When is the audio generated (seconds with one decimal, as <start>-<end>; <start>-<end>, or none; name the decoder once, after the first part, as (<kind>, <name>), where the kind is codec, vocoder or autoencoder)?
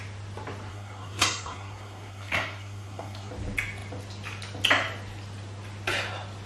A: 0.7-3.3 (codec, SNAC)